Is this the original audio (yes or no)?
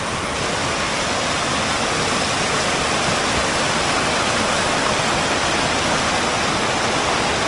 yes